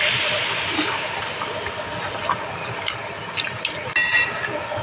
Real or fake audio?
real